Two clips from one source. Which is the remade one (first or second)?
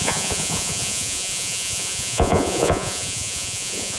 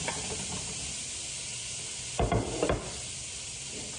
first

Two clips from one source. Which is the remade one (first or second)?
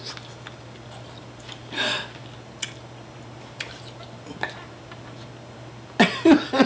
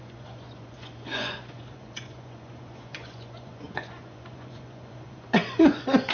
second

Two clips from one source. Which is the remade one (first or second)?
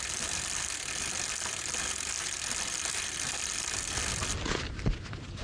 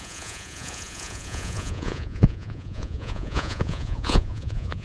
second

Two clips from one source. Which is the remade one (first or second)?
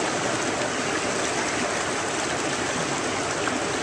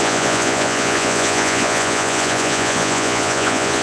second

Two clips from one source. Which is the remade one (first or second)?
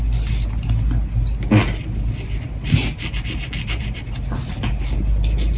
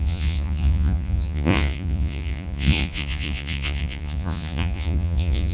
second